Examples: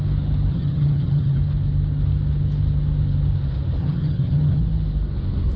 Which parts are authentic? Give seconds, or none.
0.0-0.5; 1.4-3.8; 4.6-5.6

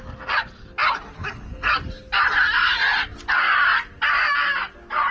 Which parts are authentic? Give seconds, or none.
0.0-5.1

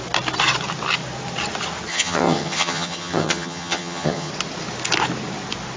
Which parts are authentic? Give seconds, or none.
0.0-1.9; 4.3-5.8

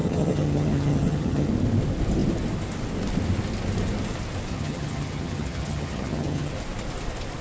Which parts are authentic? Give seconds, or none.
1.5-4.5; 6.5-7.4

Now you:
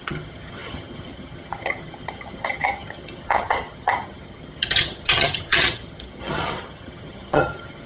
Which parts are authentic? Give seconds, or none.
none

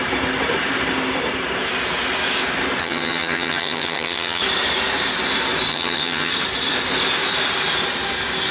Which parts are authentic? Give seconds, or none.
0.0-2.8; 4.4-5.7; 6.3-8.5